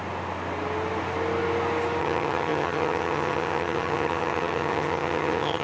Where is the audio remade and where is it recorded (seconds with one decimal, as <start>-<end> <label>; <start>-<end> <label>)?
0.0-2.0 recorded; 2.0-5.6 remade

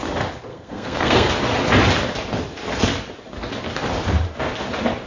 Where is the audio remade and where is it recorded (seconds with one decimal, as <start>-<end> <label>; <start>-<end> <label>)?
0.0-0.5 recorded; 0.5-1.3 remade; 1.3-5.1 recorded

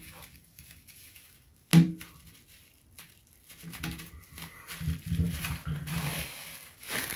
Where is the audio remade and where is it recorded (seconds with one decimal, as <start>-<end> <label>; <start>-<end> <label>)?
0.0-1.7 remade; 1.7-6.0 recorded; 6.0-7.2 remade

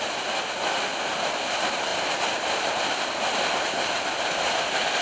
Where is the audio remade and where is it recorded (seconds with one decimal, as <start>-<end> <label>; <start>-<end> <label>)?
0.0-5.0 recorded

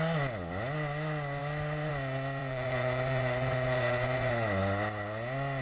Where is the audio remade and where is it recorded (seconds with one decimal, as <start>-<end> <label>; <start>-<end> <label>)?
0.0-2.4 recorded; 2.4-4.3 remade; 4.3-5.6 recorded

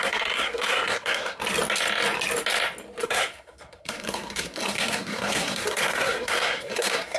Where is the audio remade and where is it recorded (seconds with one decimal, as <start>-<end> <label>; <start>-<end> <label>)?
0.0-1.4 remade; 1.4-3.0 recorded; 3.0-7.2 remade